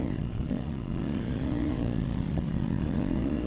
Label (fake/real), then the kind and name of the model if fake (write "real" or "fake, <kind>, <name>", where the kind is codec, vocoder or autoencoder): fake, vocoder, Vocos